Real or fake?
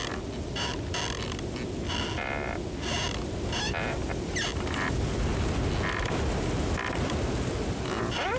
real